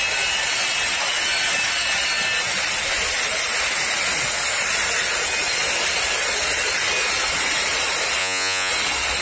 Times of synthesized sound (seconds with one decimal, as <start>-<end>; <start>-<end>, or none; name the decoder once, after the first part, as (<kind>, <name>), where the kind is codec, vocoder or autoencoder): 8.2-8.7 (vocoder, Vocos)